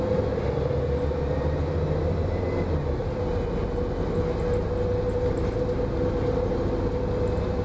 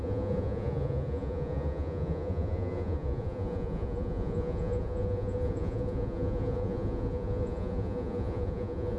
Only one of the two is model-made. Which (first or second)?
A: second